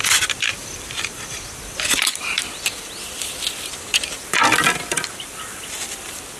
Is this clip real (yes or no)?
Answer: no